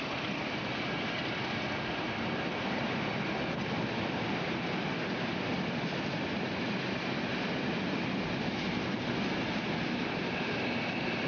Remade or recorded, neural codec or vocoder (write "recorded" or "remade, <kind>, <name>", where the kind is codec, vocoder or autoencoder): recorded